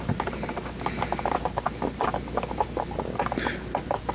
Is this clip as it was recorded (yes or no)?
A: yes